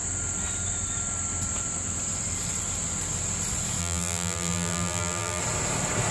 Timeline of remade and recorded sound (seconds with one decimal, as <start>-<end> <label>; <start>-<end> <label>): 0.0-3.8 recorded; 3.8-5.4 remade; 5.4-6.1 recorded